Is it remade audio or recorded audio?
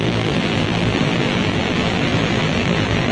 remade